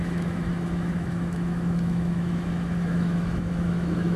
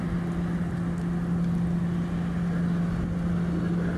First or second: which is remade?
first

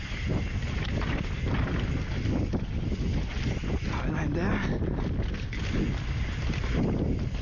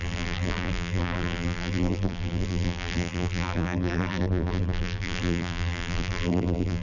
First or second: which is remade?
second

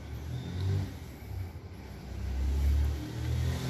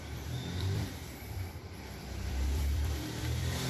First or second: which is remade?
second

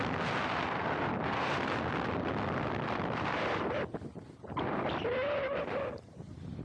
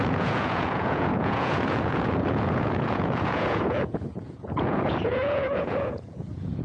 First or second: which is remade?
second